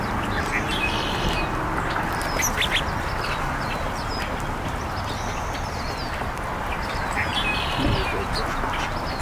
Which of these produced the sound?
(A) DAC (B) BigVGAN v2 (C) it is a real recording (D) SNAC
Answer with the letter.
C